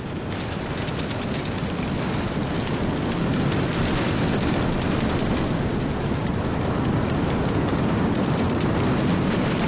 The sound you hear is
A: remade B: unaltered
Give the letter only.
B